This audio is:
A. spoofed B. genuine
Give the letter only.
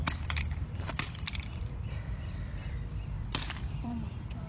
A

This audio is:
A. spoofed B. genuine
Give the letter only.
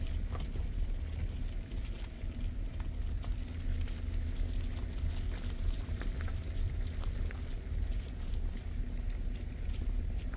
B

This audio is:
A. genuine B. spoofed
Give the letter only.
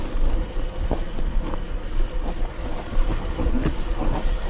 A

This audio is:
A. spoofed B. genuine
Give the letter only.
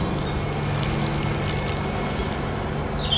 B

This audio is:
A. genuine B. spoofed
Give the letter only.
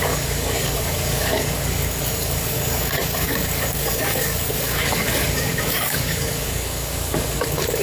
B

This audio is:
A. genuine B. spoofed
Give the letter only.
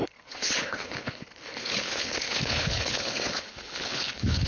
B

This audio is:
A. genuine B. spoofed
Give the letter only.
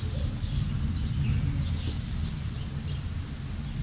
A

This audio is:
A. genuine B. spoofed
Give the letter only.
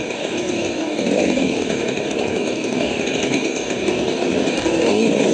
B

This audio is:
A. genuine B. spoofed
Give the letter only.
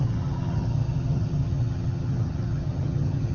B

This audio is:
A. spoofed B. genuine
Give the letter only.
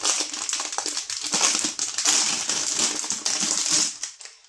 B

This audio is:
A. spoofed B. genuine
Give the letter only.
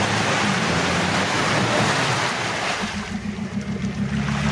B